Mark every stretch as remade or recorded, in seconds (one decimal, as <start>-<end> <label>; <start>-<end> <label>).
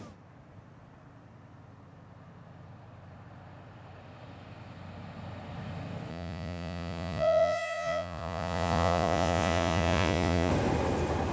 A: 0.0-6.1 recorded; 6.1-10.5 remade; 10.5-11.3 recorded